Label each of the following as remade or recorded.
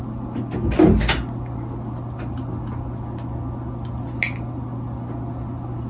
recorded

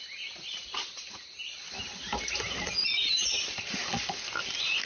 remade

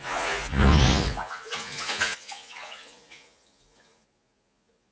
remade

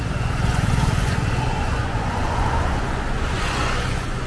remade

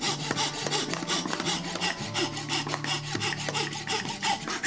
recorded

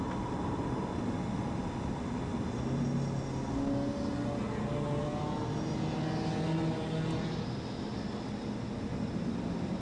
recorded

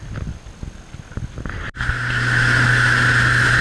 recorded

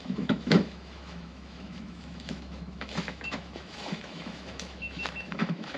remade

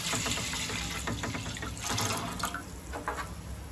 recorded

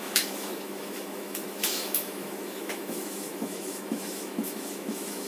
remade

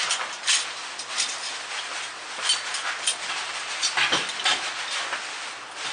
recorded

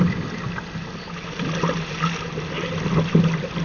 recorded